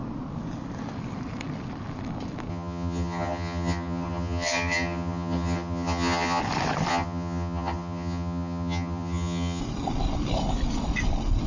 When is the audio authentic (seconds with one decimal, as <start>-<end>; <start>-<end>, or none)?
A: 0.0-2.5; 6.4-6.9; 9.6-11.5